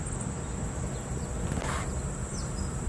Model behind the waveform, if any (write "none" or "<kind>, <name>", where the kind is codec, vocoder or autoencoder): none